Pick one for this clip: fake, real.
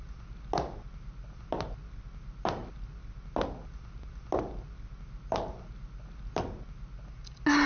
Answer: real